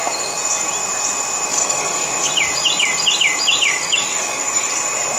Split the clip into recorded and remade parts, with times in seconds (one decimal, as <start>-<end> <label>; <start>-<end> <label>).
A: 0.0-1.5 recorded; 1.5-2.3 remade; 2.3-3.7 recorded; 3.7-4.7 remade; 4.7-5.2 recorded